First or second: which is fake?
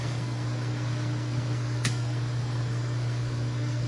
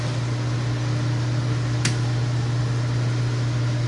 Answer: first